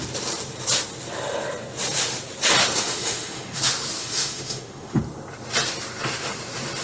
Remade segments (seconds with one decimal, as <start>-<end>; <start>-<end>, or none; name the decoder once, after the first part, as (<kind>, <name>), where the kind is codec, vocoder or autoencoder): 2.8-3.6 (autoencoder, DAC-VAE); 4.0-5.0